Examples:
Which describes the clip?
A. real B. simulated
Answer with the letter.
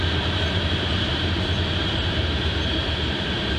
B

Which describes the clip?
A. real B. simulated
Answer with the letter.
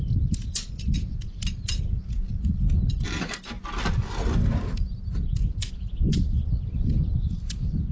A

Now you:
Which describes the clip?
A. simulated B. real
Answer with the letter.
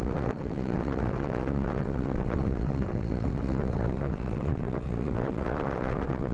A